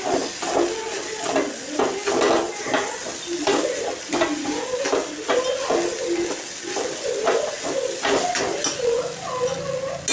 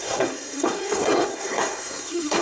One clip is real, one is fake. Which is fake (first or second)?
second